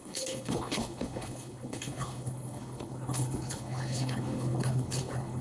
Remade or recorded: remade